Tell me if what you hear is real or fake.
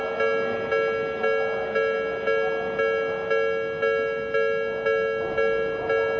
real